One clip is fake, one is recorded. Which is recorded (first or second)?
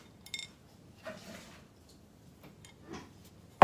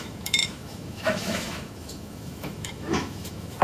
first